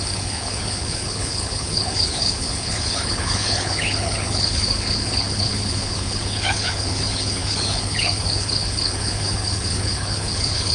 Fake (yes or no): yes